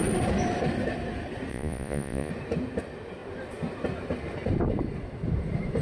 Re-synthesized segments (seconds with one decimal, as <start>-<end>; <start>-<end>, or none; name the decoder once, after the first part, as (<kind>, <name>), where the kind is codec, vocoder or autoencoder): 1.5-2.3 (vocoder, Vocos)